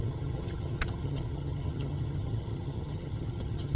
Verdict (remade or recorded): remade